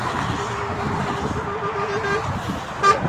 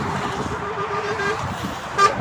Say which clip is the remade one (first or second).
second